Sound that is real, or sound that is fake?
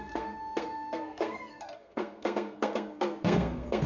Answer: fake